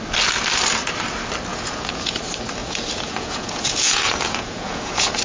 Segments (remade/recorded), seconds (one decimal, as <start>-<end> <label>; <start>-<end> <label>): 0.0-1.5 recorded; 1.5-2.2 remade; 2.2-2.6 recorded; 2.6-5.2 remade

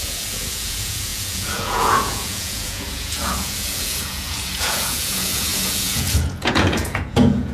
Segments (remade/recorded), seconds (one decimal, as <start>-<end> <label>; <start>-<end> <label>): 0.0-7.5 remade

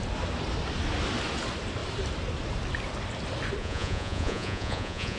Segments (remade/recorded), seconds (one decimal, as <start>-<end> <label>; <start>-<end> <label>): 0.0-3.6 recorded; 3.6-5.2 remade

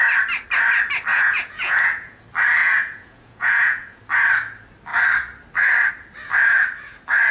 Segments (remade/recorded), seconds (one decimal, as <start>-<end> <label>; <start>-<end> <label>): 0.0-1.1 recorded; 1.1-2.2 remade; 2.2-2.6 recorded; 2.6-4.0 remade; 4.0-7.3 recorded

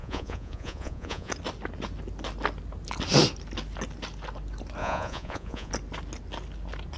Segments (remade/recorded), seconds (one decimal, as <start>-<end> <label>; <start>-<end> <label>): 0.0-1.3 remade; 1.3-4.8 recorded; 4.8-5.7 remade; 5.7-7.0 recorded

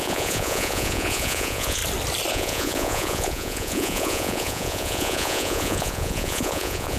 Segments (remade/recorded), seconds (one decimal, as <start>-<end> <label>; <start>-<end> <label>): 0.0-1.8 remade; 1.8-2.3 recorded; 2.3-7.0 remade